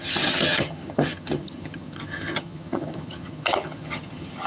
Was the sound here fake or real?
fake